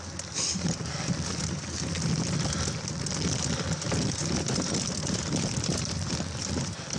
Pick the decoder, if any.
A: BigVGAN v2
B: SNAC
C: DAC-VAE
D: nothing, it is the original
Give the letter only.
A